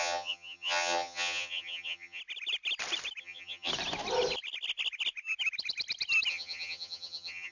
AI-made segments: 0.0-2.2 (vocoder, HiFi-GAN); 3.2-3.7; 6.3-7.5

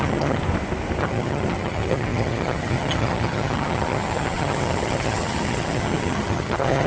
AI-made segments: 0.0-0.4 (vocoder, HiFi-GAN); 1.0-6.9

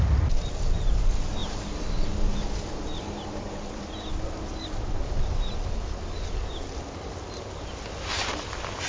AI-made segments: none

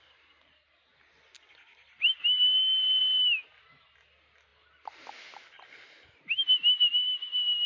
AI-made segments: none

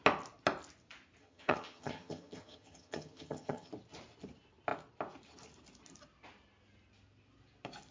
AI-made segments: 1.2-3.7 (vocoder, HiFi-GAN)

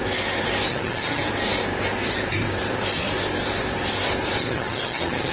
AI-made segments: 0.7-1.2 (vocoder, HiFi-GAN); 4.4-5.3

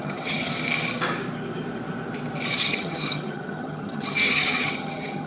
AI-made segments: 0.0-0.5 (vocoder, HiFi-GAN); 2.6-5.3

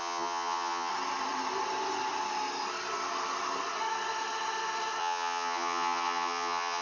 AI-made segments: 0.0-0.9 (vocoder, HiFi-GAN); 5.0-6.8